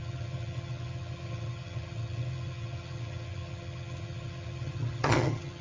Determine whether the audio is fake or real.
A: fake